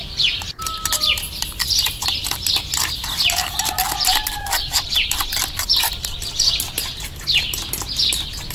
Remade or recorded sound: recorded